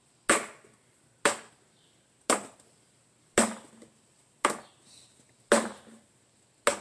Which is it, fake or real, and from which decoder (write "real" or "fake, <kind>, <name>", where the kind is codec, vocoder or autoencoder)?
real